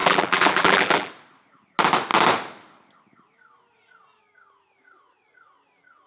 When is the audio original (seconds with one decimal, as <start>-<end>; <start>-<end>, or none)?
1.1-6.1